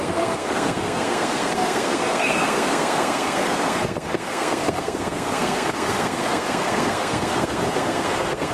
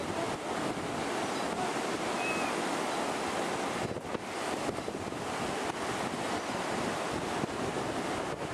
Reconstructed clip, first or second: first